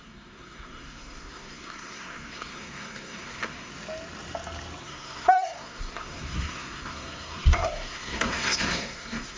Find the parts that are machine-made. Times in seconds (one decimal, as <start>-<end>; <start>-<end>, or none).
0.0-3.7; 4.8-9.4